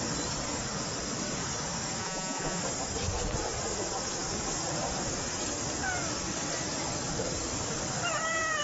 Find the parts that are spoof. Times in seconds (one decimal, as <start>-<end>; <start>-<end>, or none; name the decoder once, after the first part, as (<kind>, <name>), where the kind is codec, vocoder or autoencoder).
2.0-2.6 (vocoder, Vocos)